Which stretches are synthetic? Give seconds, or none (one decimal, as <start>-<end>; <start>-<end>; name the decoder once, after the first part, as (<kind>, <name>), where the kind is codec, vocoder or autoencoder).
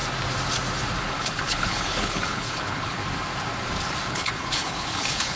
1.0-3.0 (codec, HILCodec); 4.1-5.4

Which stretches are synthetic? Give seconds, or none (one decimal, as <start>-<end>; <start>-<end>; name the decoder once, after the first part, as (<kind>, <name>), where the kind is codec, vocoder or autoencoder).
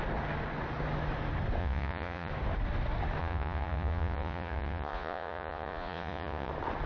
1.6-2.3 (vocoder, Vocos); 3.2-6.5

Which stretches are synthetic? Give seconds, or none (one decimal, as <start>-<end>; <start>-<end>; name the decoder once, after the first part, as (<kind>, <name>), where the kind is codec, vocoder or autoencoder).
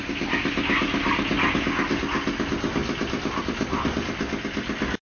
none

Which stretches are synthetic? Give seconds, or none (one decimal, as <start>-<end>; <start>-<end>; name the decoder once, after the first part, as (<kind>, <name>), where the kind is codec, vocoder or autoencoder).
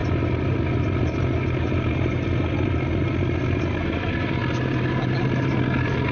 none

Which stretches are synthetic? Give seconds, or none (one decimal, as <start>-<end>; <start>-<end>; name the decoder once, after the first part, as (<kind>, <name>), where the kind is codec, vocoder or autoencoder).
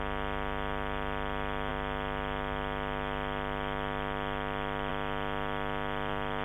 none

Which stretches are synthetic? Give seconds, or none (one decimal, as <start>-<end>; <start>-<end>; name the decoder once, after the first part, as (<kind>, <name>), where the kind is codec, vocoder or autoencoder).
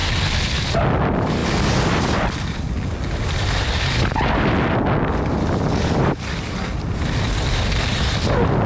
0.6-1.4 (vocoder, BigVGAN v2); 5.8-6.7; 7.4-8.7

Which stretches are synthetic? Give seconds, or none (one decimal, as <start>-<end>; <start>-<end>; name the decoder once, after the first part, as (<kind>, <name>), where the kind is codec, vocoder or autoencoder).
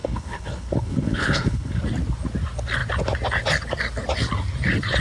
0.0-1.8 (codec, HILCodec)